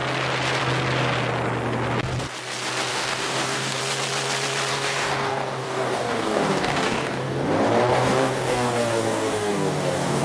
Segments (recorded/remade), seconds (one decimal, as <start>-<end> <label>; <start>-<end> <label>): 0.0-2.9 recorded; 2.9-3.8 remade; 3.8-4.7 recorded; 4.7-7.5 remade; 7.5-7.9 recorded; 7.9-10.2 remade